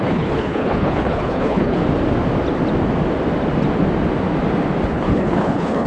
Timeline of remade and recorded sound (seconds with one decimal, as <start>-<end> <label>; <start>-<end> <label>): 0.0-1.8 remade; 1.8-4.9 recorded; 4.9-5.9 remade